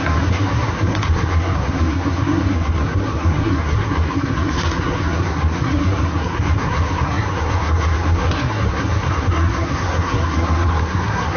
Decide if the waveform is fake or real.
fake